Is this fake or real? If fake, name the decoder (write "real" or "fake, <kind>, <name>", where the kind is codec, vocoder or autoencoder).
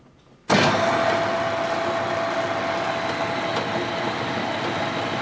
real